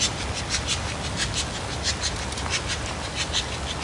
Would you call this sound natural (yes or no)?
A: yes